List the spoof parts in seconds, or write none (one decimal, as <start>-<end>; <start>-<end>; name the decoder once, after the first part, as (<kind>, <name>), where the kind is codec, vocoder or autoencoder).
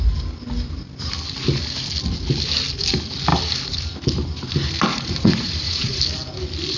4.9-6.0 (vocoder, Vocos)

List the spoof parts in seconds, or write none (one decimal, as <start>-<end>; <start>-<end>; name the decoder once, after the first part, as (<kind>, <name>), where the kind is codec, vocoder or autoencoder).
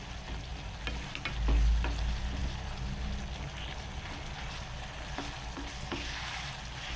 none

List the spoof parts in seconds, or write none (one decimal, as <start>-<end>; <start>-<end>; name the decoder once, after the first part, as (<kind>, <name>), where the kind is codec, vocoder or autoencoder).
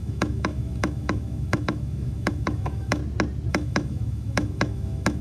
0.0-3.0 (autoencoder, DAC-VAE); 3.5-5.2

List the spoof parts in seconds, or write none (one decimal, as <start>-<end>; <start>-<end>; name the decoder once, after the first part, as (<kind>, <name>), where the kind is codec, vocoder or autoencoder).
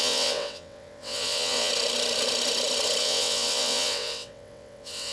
0.0-1.7 (vocoder, WaveNeXt); 3.0-5.1